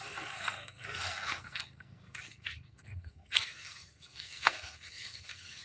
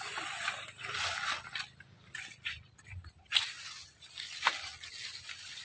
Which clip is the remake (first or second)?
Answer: first